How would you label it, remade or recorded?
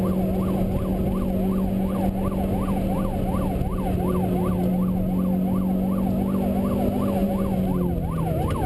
recorded